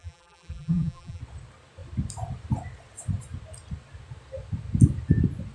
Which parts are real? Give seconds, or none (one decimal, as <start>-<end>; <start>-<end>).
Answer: 1.2-5.5

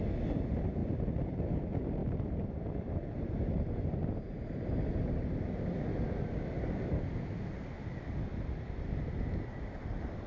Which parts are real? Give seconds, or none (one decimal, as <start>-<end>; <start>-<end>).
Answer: 0.0-0.8; 1.4-2.0; 3.9-10.3

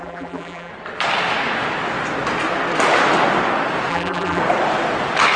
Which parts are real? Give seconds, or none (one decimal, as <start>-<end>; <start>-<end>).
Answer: 0.7-3.9; 4.4-5.4

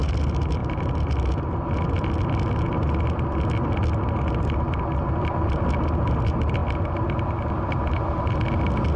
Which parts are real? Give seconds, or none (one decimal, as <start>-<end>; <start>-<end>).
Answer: 0.0-9.0

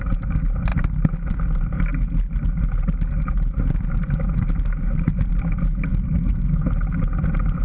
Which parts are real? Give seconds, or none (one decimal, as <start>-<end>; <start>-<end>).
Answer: 0.0-7.6